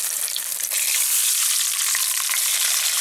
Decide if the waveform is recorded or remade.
remade